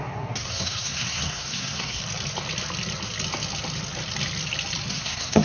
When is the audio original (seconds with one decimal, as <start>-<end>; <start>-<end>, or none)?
2.0-4.9